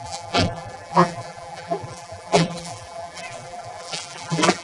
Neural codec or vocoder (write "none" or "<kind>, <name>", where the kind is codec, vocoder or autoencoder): vocoder, BigVGAN v2